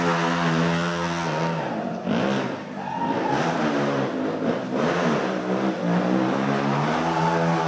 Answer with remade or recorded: recorded